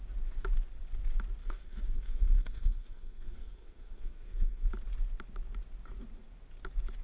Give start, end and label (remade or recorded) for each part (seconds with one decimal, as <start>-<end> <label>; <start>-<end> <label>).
0.0-1.4 recorded; 1.4-4.7 remade; 4.7-7.0 recorded